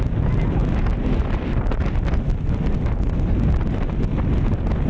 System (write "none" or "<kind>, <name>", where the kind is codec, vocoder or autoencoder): none